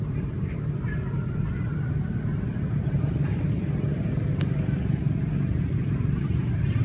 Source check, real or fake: real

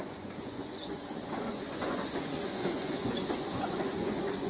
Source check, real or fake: fake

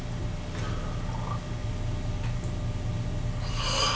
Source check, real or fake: real